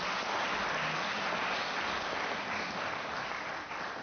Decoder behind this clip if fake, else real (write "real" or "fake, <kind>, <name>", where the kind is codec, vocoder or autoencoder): real